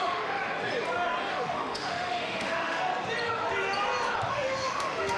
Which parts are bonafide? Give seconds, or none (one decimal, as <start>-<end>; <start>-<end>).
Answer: 0.4-1.3; 2.9-4.3